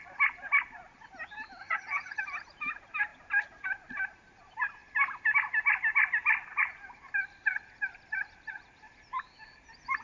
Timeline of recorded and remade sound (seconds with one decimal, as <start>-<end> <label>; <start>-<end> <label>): 0.0-1.6 recorded; 1.6-2.2 remade; 2.2-10.0 recorded